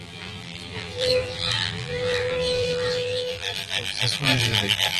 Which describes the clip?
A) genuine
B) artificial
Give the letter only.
B